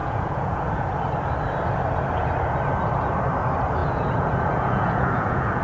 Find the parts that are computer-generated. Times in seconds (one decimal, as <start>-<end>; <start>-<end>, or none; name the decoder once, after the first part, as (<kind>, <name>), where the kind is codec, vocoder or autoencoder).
0.0-0.9 (vocoder, Vocos); 3.8-5.6